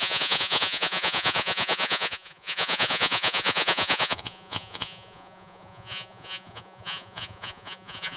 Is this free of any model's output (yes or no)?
no